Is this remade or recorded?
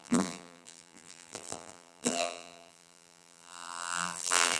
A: remade